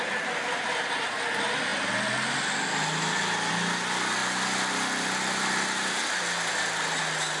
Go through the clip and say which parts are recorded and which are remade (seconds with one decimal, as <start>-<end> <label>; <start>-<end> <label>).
0.0-7.4 recorded